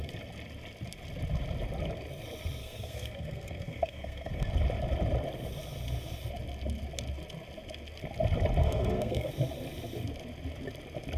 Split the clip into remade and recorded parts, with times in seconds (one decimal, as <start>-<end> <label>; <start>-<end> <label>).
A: 0.0-2.6 recorded; 2.6-4.5 remade; 4.5-8.6 recorded; 8.6-9.3 remade; 9.3-11.2 recorded